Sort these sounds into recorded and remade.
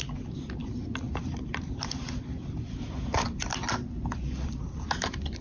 recorded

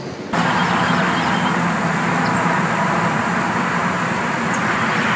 recorded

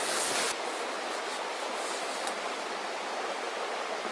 recorded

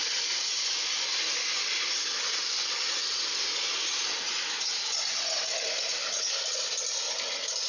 recorded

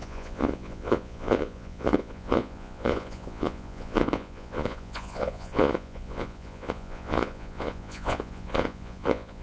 remade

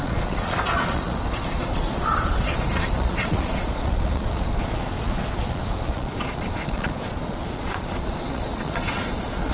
remade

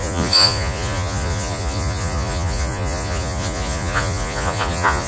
remade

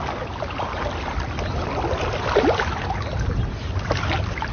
recorded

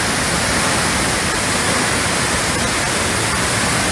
recorded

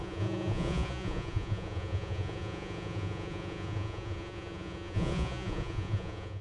remade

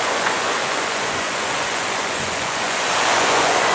remade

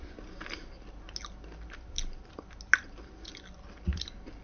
recorded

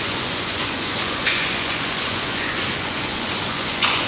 remade